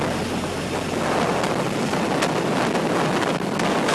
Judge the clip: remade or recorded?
recorded